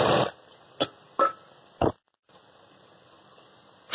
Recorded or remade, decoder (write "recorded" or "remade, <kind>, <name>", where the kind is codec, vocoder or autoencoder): recorded